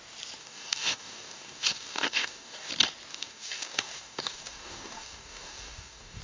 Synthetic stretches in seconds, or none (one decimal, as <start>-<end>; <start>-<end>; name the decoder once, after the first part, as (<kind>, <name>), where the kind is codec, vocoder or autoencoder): 0.4-2.7 (codec, DAC); 3.1-6.2